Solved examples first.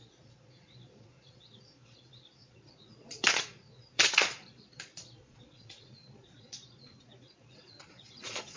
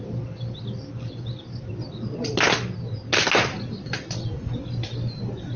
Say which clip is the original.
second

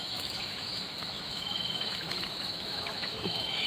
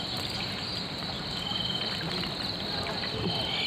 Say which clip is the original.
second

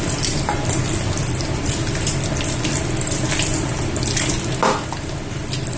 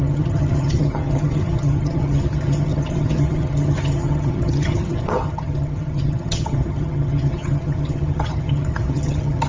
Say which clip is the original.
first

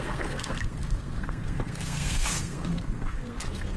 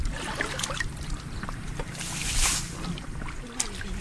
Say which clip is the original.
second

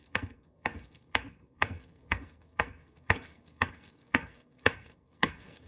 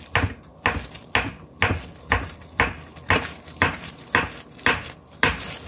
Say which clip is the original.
second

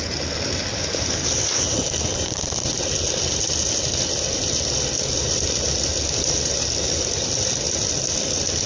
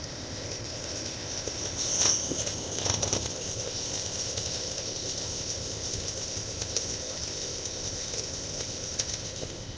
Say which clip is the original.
first